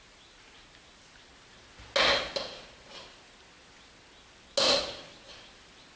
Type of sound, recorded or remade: recorded